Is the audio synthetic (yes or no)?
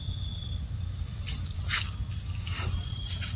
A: no